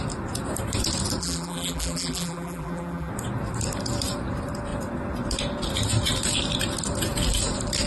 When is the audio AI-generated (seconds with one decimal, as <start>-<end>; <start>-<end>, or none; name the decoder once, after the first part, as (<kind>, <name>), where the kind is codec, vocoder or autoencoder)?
1.2-3.1 (vocoder, BigVGAN v2)